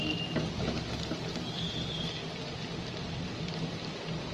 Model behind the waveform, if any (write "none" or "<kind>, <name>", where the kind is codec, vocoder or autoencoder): none